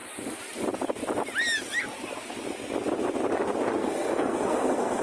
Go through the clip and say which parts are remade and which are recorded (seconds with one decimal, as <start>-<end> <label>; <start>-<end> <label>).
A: 0.0-3.8 recorded; 3.8-5.0 remade